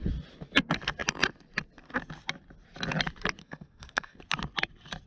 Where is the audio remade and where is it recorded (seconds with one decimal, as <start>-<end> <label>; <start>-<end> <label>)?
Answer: 0.0-3.4 recorded; 3.4-4.2 remade; 4.2-5.1 recorded